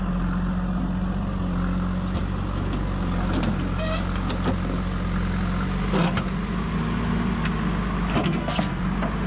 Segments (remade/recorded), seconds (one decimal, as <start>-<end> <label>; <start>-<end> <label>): 0.0-8.2 recorded; 8.2-8.8 remade; 8.8-9.3 recorded